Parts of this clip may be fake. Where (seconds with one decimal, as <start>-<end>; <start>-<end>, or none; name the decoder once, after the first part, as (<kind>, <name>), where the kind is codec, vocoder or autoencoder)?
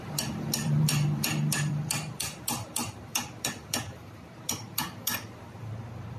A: 0.0-6.2 (vocoder, BigVGAN v2)